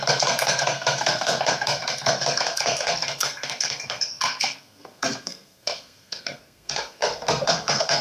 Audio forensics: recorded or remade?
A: remade